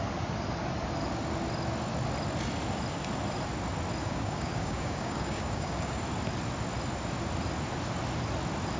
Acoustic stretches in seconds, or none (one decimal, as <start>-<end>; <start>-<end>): 0.0-4.0; 6.0-8.8